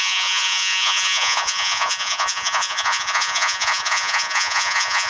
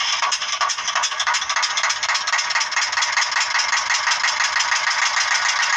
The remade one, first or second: first